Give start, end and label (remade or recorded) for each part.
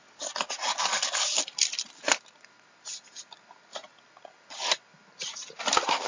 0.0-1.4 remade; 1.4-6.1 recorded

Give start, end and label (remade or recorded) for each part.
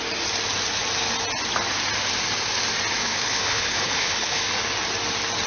0.0-3.0 recorded; 3.0-4.4 remade; 4.4-5.5 recorded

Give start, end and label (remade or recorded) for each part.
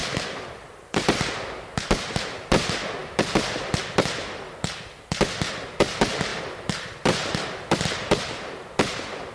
0.0-1.0 remade; 1.0-3.0 recorded; 3.0-3.8 remade; 3.8-6.3 recorded; 6.3-8.1 remade; 8.1-9.3 recorded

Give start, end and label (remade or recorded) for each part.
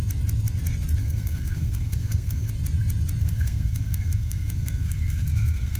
0.0-1.0 recorded; 1.0-2.5 remade; 2.5-3.2 recorded; 3.2-5.8 remade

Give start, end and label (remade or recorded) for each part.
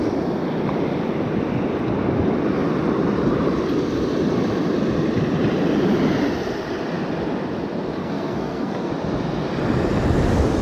0.0-8.0 recorded; 8.0-8.9 remade; 8.9-10.6 recorded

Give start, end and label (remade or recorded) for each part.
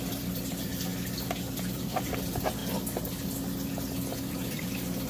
0.0-0.9 remade; 0.9-1.4 recorded; 1.4-2.6 remade; 2.6-4.3 recorded; 4.3-5.1 remade